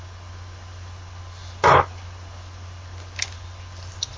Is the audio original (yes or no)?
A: yes